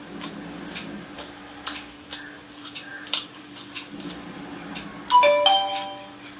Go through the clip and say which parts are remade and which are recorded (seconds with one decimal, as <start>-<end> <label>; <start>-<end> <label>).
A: 0.0-2.9 recorded; 2.9-4.4 remade; 4.4-6.4 recorded